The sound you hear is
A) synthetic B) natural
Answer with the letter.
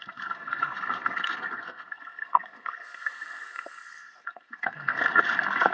A